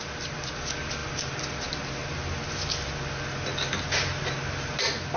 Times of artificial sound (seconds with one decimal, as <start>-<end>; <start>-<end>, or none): none